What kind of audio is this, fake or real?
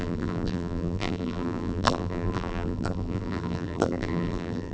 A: fake